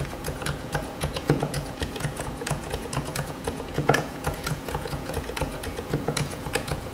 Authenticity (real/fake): fake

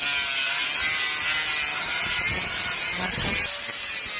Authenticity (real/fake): real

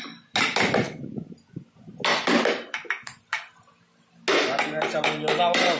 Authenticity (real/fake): real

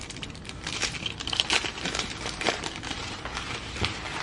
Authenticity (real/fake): fake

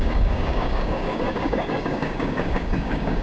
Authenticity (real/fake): fake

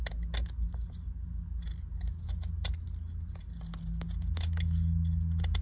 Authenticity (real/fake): real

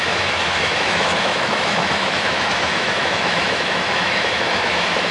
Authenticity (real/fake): fake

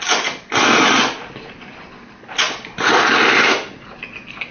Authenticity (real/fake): real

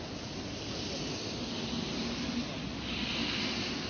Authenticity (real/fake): real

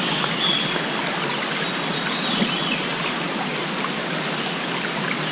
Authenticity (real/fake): real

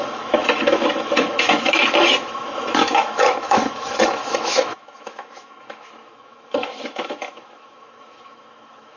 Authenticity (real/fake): fake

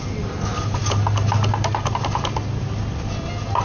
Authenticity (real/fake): real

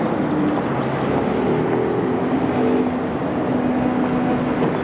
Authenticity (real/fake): real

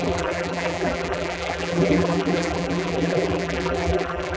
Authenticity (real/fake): fake